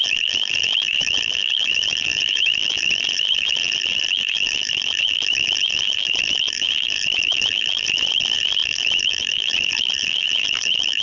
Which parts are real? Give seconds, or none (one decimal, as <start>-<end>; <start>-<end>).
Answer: none